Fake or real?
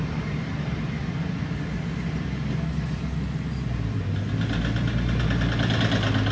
real